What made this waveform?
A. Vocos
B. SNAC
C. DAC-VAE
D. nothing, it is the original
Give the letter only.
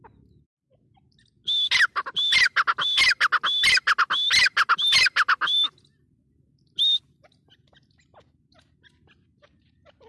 D